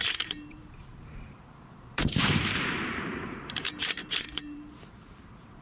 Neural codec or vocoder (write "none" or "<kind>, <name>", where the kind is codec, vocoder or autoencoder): vocoder, BigVGAN v2